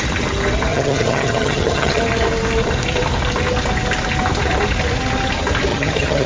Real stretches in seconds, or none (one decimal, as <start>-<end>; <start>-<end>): 0.0-0.7; 2.0-5.7